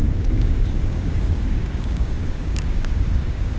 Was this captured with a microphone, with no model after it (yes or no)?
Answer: no